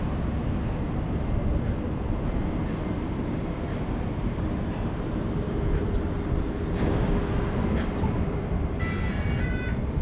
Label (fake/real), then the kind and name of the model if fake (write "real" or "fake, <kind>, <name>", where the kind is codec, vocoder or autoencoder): real